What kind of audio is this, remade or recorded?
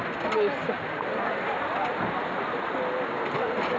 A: recorded